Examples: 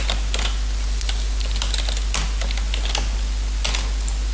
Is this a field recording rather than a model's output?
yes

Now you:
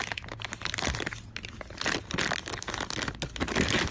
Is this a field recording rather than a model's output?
yes